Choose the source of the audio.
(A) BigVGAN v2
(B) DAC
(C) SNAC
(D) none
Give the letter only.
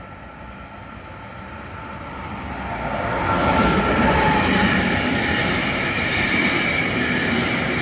D